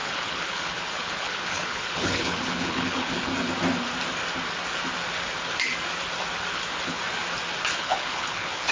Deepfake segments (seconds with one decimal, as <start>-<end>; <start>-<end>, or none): 0.0-3.3; 6.5-7.0; 7.7-8.7